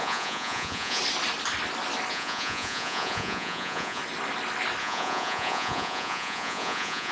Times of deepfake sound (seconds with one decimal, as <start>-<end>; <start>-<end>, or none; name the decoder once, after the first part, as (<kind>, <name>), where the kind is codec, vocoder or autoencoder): 0.0-1.0 (vocoder, Vocos); 2.1-4.0; 4.8-7.1